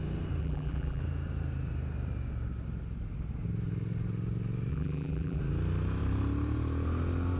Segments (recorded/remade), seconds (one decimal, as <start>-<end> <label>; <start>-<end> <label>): 0.0-0.4 recorded; 0.4-1.0 remade; 1.0-4.7 recorded; 4.7-5.4 remade; 5.4-7.4 recorded